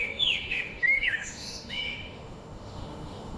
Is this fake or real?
fake